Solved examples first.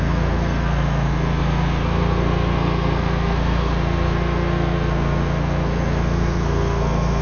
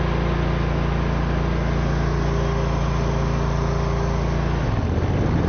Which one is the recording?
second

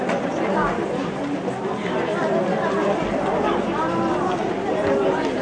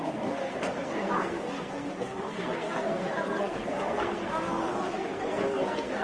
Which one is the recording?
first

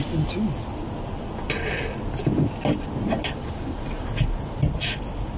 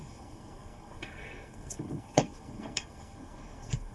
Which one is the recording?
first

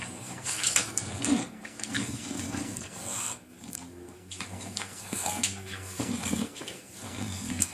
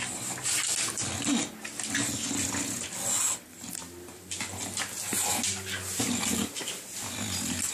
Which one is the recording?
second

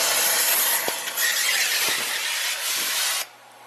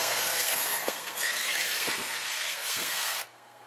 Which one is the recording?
first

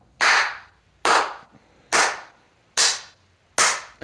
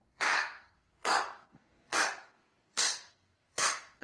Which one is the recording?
first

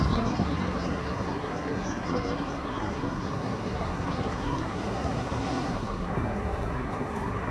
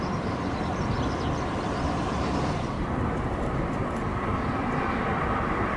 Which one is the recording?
second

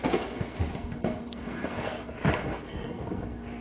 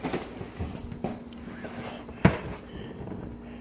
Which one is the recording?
second